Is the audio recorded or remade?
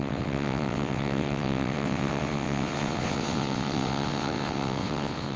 remade